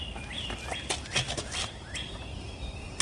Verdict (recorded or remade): recorded